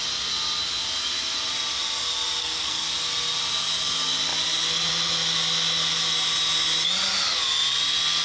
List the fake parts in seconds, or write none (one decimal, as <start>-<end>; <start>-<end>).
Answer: 2.4-2.9

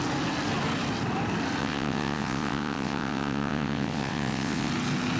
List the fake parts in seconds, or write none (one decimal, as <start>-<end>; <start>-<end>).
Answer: 1.6-4.7

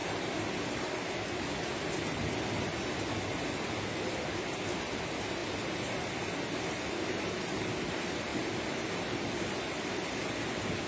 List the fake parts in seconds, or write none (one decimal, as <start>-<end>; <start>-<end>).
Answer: none